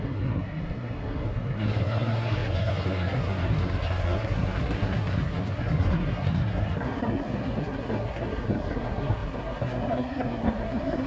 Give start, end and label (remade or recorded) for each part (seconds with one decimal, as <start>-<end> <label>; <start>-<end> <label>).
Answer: 0.0-11.1 remade